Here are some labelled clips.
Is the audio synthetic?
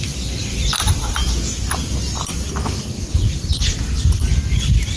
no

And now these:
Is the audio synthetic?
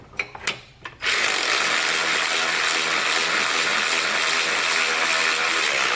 no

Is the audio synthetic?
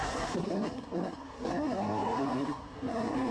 yes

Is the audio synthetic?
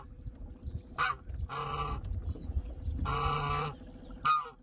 no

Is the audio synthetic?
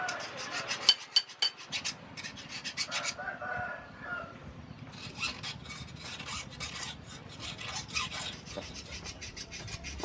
no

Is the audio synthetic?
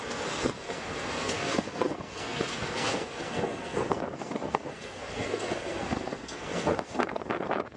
yes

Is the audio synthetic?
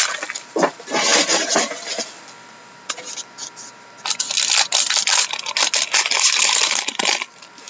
no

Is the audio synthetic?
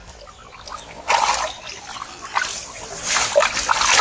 no